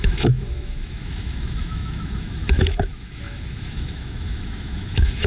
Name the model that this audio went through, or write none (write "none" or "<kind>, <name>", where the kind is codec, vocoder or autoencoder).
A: autoencoder, DAC-VAE